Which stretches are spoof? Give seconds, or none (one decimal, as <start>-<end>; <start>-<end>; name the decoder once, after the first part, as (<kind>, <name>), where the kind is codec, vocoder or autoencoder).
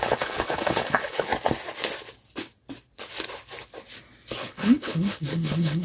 0.0-1.3 (codec, HILCodec); 4.4-5.8